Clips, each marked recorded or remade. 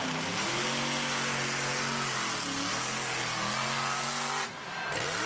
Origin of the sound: recorded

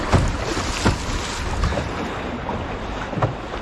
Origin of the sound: recorded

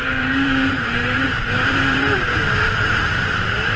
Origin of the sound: remade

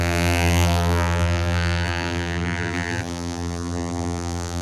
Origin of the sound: remade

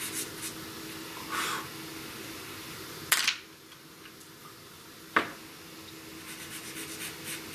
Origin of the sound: recorded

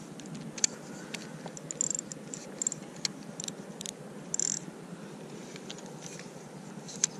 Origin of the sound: recorded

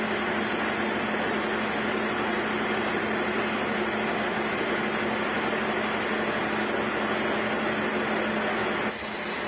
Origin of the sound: recorded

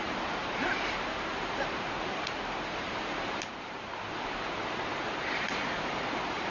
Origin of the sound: remade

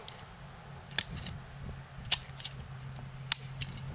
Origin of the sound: recorded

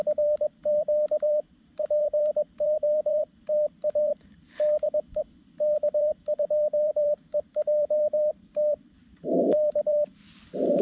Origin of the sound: remade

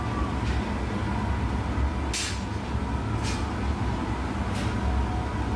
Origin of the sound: recorded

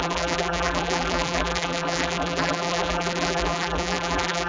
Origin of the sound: remade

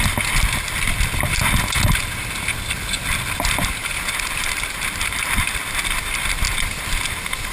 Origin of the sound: recorded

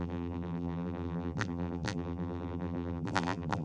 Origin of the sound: remade